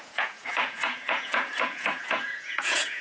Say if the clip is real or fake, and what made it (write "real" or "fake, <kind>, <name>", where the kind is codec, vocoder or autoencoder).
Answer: fake, vocoder, Vocos